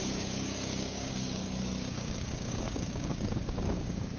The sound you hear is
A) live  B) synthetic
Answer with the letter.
B